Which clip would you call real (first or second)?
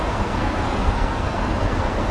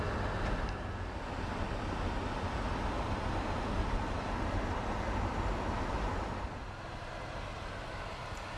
second